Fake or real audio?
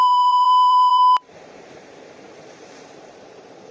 fake